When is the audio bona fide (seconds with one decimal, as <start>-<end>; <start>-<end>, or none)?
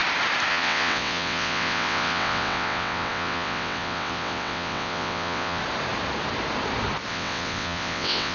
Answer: 0.0-0.5; 5.6-7.1